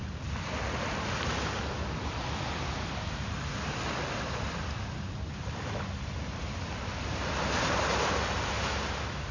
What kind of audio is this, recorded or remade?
recorded